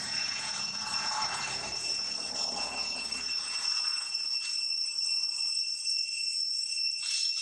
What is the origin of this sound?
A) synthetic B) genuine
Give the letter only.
A